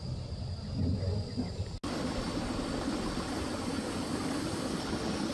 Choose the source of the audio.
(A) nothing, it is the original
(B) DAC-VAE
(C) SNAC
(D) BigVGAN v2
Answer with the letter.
A